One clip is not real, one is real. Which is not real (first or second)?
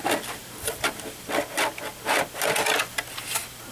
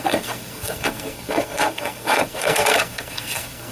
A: second